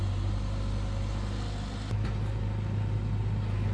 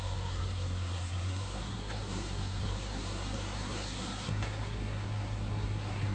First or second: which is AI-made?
second